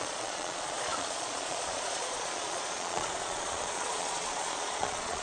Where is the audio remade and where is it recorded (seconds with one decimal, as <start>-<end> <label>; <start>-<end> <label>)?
0.0-5.2 remade